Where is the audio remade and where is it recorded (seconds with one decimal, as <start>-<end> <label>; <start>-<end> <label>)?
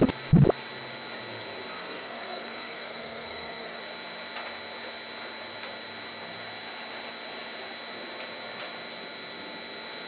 0.0-1.8 recorded; 1.8-3.8 remade; 3.8-10.1 recorded